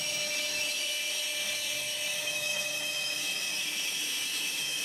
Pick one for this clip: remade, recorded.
remade